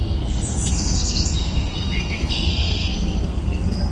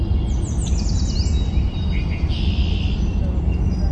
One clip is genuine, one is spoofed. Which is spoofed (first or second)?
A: first